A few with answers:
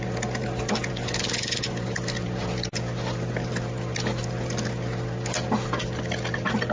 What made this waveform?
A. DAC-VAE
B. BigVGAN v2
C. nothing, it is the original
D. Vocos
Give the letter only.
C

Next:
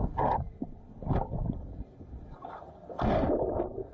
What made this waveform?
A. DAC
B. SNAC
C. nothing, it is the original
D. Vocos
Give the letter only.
C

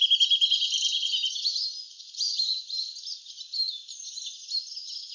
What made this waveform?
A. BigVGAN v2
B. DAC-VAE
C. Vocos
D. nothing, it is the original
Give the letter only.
D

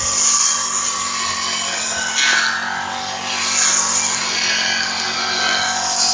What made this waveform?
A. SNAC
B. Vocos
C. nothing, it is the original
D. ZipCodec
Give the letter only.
C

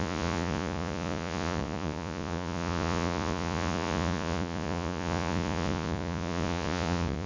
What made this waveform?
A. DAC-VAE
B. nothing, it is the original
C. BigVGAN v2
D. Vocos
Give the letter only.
D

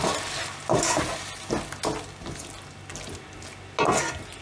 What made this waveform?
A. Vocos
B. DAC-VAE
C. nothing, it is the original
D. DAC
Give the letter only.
C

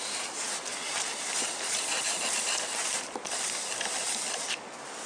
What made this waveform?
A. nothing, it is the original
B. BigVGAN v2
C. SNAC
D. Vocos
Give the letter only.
A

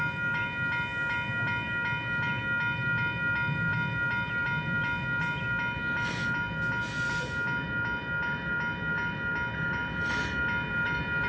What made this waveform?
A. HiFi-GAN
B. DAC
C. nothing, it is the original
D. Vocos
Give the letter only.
C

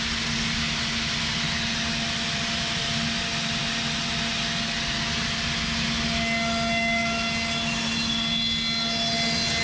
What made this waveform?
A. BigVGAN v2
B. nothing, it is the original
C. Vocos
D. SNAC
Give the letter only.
B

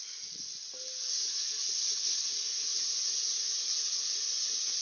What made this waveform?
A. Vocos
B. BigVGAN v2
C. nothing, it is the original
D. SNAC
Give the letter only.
C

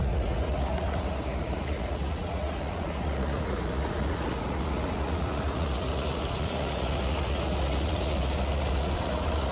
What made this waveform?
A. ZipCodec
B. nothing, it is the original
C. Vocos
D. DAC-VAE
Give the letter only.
C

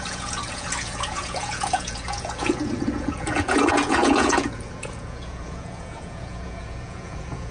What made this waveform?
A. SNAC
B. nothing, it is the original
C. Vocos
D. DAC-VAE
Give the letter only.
C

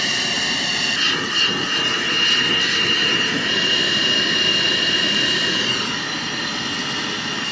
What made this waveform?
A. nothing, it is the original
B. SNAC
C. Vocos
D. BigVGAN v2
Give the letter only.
A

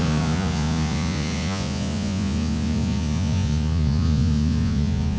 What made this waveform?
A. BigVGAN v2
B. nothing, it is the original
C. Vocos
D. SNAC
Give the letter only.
C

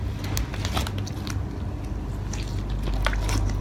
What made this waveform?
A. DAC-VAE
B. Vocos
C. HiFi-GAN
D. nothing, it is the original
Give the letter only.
D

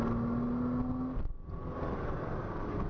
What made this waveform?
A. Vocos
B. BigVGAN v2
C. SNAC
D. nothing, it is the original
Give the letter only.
D